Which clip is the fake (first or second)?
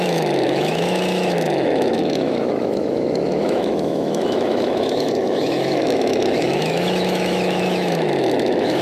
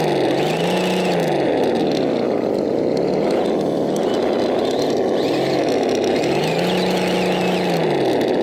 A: first